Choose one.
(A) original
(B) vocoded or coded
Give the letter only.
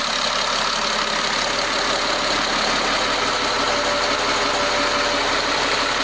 A